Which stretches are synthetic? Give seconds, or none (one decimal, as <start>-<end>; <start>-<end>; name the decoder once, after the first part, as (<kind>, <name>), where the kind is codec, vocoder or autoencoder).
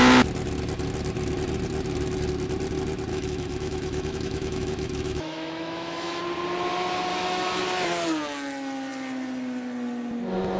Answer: 3.1-6.2 (autoencoder, DAC-VAE); 7.1-7.6